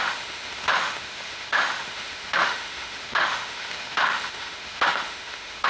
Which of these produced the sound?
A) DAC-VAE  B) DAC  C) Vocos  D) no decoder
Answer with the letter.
A